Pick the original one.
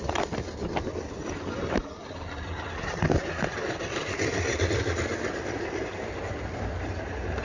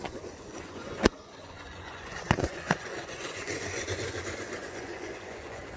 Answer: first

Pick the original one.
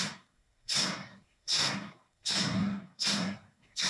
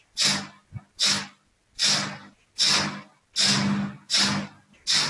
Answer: second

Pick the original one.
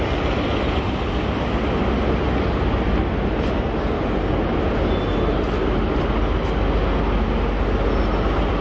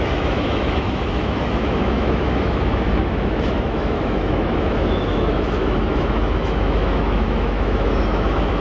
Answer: first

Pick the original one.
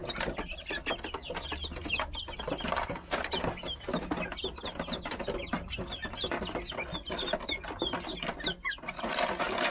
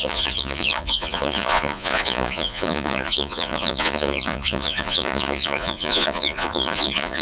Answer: first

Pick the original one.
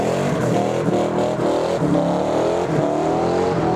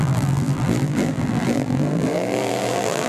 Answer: first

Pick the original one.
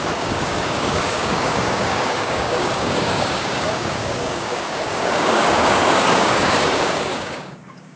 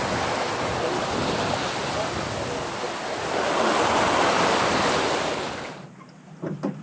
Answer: second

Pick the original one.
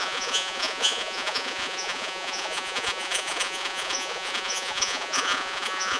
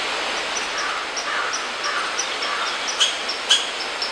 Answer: second